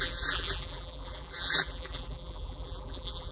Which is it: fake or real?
fake